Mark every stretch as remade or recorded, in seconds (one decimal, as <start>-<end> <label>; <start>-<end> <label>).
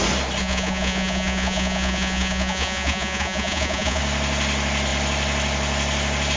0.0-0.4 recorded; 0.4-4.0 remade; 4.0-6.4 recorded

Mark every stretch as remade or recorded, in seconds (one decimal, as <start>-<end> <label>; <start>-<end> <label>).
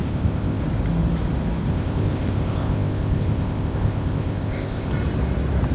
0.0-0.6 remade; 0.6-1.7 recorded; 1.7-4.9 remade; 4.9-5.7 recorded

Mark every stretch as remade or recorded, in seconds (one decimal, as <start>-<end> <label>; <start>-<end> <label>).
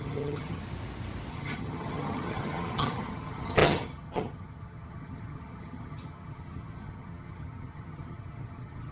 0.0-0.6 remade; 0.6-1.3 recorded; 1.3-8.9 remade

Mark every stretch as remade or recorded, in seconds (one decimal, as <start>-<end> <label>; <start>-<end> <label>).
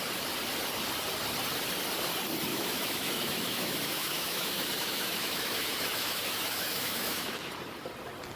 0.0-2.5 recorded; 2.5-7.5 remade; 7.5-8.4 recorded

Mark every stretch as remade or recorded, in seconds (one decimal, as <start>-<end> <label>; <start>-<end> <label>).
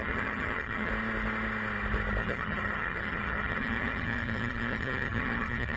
0.0-0.9 remade; 0.9-2.2 recorded; 2.2-5.8 remade